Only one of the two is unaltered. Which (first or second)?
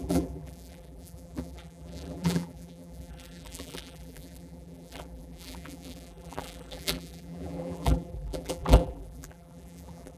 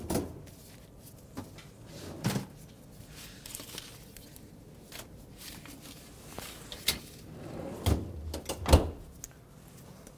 second